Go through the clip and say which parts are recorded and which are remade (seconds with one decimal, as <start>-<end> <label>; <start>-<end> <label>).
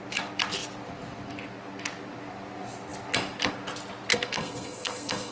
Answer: 0.0-4.1 recorded; 4.1-5.3 remade